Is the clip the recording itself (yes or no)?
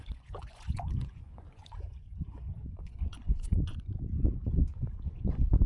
no